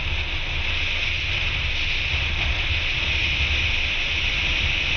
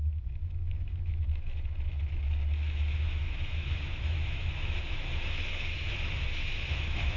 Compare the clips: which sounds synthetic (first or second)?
second